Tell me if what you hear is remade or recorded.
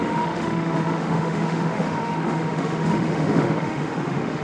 remade